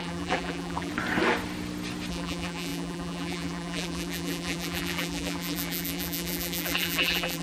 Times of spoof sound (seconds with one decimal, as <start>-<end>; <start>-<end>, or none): 0.0-0.9; 2.1-7.4